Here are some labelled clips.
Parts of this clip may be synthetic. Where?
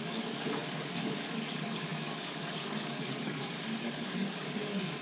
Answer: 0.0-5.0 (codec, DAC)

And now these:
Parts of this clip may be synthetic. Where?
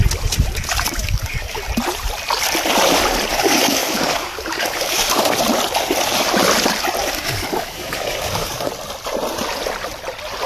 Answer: 1.0-1.6 (codec, DAC); 3.3-5.4; 7.0-8.7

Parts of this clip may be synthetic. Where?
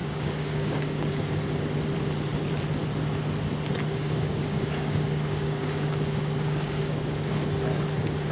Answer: 0.0-1.1 (codec, DAC); 3.9-7.5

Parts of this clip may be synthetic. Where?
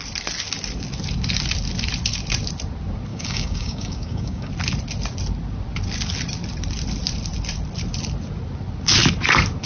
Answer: 3.1-4.5 (codec, DAC)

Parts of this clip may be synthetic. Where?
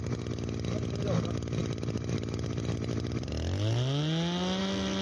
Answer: none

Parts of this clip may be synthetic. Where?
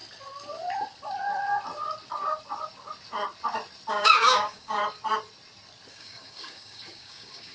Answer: 3.9-4.8 (codec, DAC); 5.9-7.5